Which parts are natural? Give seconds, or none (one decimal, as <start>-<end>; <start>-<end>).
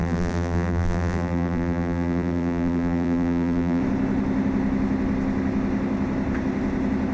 3.8-7.1